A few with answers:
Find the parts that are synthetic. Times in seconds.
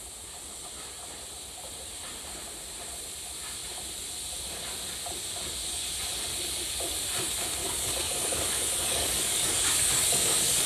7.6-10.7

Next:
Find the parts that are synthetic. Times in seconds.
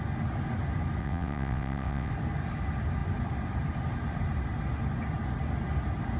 1.0-2.1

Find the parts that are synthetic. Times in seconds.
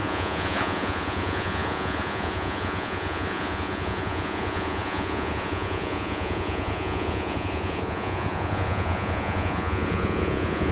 0.0-10.7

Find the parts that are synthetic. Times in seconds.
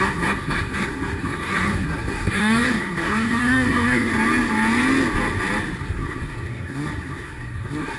0.0-4.1; 5.8-8.0